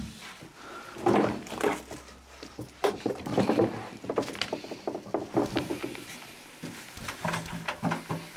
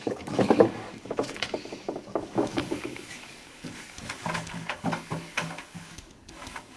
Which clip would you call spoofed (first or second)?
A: second